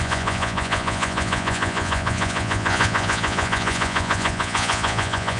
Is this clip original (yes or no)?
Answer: no